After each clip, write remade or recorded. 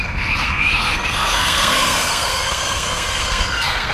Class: remade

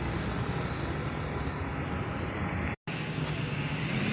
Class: recorded